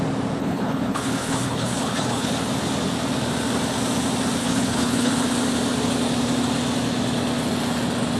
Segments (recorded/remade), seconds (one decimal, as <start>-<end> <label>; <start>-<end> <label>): 0.0-0.4 recorded; 0.4-2.3 remade; 2.3-4.4 recorded; 4.4-5.1 remade; 5.1-8.2 recorded